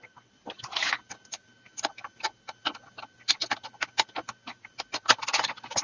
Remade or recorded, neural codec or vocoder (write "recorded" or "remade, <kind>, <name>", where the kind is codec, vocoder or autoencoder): recorded